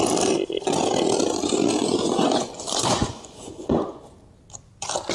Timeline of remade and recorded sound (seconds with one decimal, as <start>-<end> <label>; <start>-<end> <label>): 0.0-1.8 recorded; 1.8-4.0 remade; 4.0-5.1 recorded